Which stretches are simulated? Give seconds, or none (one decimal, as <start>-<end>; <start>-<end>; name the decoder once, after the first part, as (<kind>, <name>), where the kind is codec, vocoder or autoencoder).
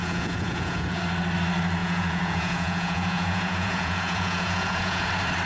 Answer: 0.0-1.0 (vocoder, Vocos); 1.8-5.1